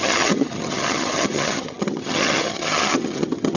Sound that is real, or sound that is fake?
fake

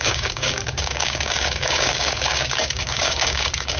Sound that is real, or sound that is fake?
fake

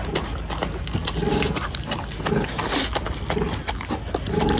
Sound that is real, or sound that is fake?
real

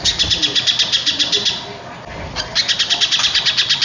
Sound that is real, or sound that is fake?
real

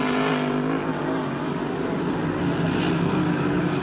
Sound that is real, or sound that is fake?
real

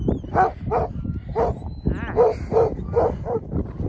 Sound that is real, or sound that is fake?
real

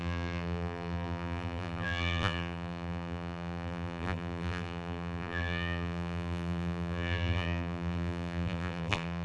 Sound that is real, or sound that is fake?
fake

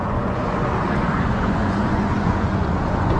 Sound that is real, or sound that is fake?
fake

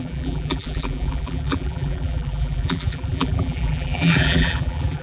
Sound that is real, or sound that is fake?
fake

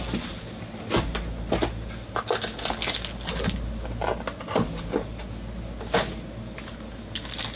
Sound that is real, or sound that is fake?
real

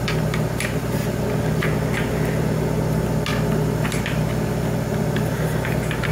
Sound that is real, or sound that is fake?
real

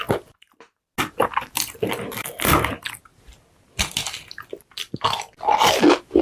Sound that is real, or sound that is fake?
real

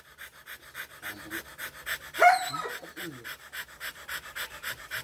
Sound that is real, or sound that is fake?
real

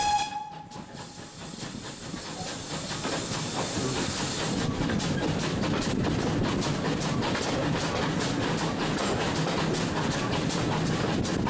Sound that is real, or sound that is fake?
real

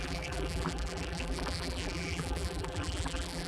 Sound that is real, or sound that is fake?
fake